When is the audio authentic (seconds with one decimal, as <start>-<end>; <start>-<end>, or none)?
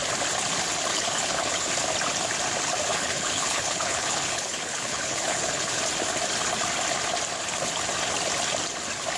0.0-0.9; 1.7-2.9; 5.8-9.2